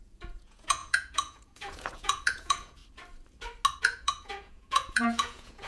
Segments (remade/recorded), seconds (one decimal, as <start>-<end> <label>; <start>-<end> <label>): 0.0-2.8 remade; 2.8-3.8 recorded; 3.8-5.7 remade